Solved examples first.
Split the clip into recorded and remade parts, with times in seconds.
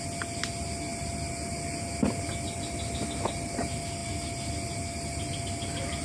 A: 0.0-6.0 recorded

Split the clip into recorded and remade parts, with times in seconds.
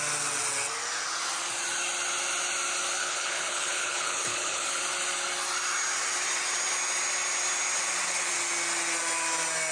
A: 0.0-3.0 recorded; 3.0-4.8 remade; 4.8-9.7 recorded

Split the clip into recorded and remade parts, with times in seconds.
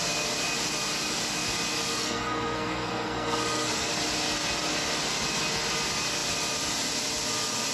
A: 0.0-1.9 recorded; 1.9-3.9 remade; 3.9-7.7 recorded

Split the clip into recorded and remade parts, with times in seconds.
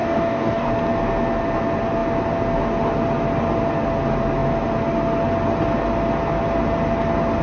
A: 0.0-0.7 remade; 0.7-7.4 recorded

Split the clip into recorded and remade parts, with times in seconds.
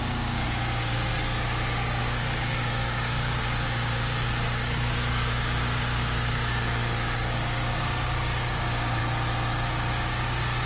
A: 0.0-1.1 remade; 1.1-2.0 recorded; 2.0-9.0 remade; 9.0-9.7 recorded; 9.7-10.7 remade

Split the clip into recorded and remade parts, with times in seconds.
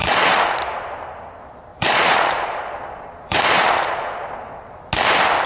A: 0.0-0.6 remade; 0.6-1.7 recorded; 1.7-4.8 remade; 4.8-5.5 recorded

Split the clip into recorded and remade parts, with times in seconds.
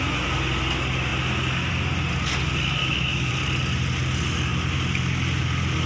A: 0.0-2.8 recorded; 2.8-3.3 remade; 3.3-5.9 recorded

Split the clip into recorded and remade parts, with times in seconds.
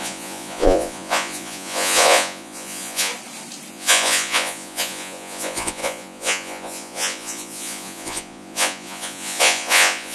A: 0.0-3.1 remade; 3.1-3.7 recorded; 3.7-10.1 remade